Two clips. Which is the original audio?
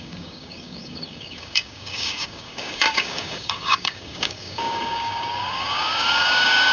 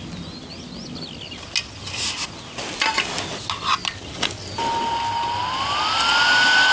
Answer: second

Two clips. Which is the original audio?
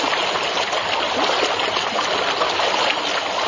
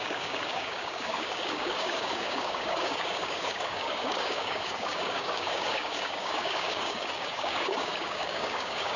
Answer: first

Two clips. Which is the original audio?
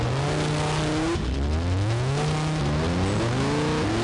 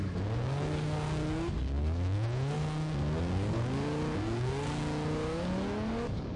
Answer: first